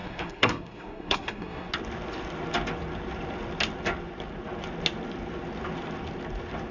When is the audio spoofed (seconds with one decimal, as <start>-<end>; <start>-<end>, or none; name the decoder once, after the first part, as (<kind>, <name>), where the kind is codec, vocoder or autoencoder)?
0.0-1.7 (codec, SNAC)